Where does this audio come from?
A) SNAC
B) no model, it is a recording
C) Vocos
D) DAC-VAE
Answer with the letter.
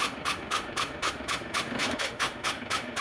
D